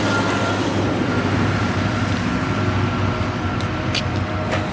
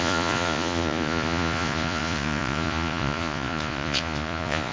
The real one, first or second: first